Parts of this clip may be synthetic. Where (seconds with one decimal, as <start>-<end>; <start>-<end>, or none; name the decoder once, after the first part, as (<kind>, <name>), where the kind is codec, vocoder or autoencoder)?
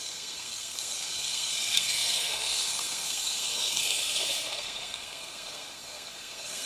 0.0-6.7 (codec, SNAC)